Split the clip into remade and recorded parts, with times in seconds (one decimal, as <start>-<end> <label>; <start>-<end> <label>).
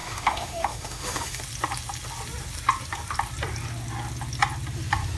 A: 0.0-1.4 remade; 1.4-5.2 recorded